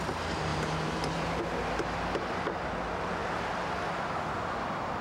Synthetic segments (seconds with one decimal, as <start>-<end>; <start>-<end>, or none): 0.5-1.4; 3.2-3.7